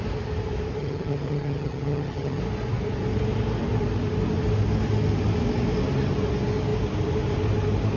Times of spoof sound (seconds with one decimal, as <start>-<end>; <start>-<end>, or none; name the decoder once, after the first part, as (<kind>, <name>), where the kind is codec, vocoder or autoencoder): 0.8-2.4 (vocoder, HiFi-GAN)